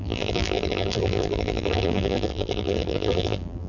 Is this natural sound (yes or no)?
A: no